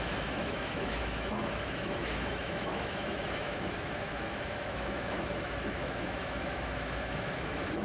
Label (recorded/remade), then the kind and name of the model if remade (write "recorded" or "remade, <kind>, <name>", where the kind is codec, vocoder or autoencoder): remade, autoencoder, DAC-VAE